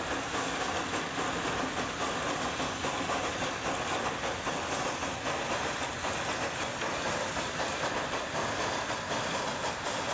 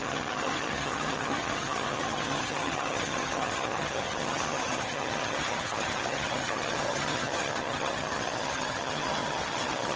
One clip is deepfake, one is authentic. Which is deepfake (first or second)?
second